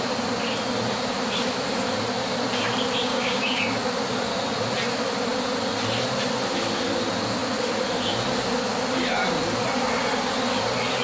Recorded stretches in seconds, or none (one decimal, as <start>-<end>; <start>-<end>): 0.0-3.1; 3.6-11.0